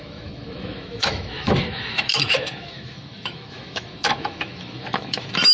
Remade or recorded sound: remade